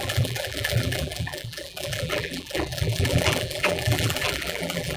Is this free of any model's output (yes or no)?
no